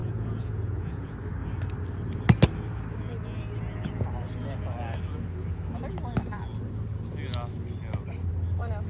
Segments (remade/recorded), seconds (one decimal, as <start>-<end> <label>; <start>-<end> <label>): 0.0-1.1 remade; 1.1-8.9 recorded